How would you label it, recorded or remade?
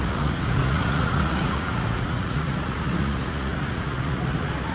remade